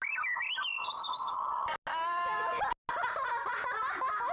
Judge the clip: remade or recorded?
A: recorded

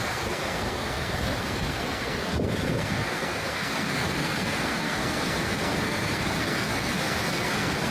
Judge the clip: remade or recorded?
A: remade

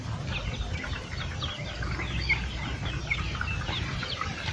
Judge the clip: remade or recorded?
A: recorded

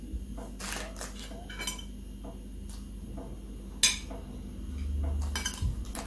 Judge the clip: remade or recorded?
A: recorded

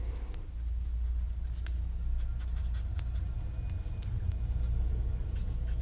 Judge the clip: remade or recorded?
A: recorded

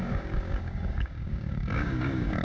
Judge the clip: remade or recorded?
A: remade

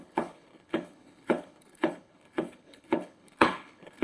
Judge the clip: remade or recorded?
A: remade